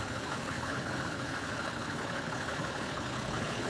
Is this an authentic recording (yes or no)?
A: no